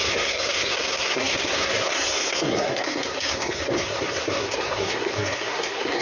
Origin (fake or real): fake